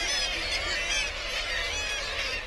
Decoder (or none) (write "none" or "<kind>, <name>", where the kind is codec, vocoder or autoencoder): none